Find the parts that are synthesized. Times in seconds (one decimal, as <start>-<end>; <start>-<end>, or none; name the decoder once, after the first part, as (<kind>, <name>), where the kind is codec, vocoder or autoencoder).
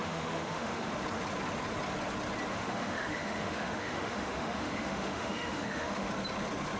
0.0-0.9 (autoencoder, DAC-VAE); 2.5-6.1